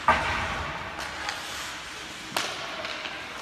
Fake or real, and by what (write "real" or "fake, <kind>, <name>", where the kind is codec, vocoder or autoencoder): real